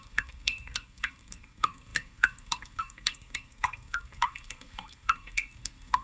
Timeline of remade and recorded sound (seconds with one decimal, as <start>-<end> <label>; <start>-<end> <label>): 0.0-6.0 remade